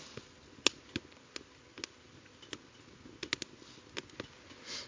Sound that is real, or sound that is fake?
real